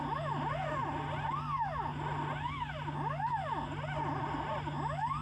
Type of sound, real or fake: real